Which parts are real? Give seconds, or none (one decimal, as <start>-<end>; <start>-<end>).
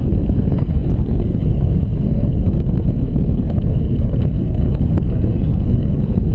none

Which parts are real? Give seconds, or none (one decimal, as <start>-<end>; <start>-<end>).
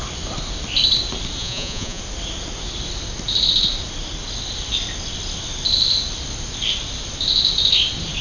0.0-1.4; 2.0-8.2